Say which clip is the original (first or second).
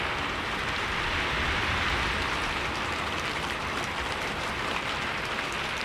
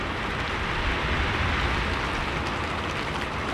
second